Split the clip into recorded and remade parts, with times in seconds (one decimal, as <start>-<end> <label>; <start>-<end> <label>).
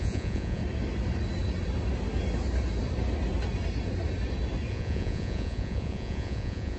0.0-0.6 remade; 0.6-4.7 recorded; 4.7-6.8 remade